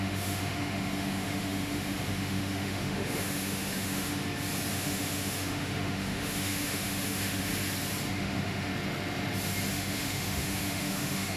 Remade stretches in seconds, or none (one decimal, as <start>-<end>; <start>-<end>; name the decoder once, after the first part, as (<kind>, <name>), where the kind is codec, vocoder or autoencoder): 0.0-4.2 (autoencoder, DAC-VAE); 4.7-7.5; 8.1-8.7; 9.7-11.4